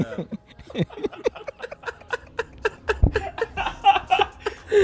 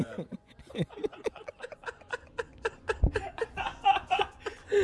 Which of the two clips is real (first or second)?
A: first